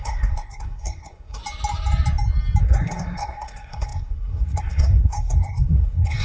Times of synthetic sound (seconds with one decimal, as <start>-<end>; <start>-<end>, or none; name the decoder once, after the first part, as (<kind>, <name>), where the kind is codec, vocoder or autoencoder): 0.0-1.4 (codec, SNAC); 2.6-6.2